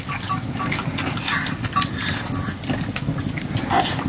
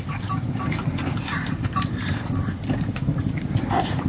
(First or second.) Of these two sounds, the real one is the first